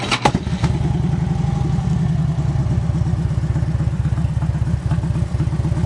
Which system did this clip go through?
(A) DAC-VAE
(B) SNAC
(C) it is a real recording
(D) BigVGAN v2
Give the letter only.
C